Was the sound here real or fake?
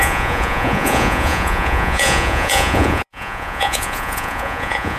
fake